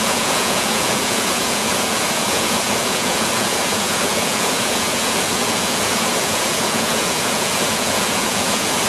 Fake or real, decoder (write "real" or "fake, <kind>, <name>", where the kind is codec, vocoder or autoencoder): fake, vocoder, Vocos